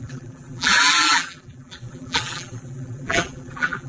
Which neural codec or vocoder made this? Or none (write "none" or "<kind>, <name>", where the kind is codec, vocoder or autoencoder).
vocoder, BigVGAN v2